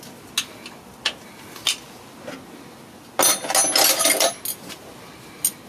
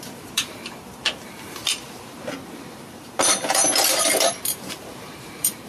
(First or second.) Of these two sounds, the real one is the first